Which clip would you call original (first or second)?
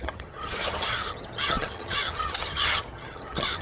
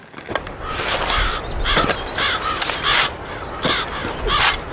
second